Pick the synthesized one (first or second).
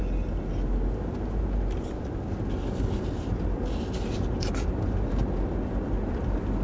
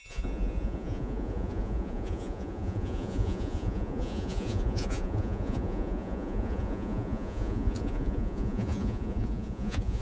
second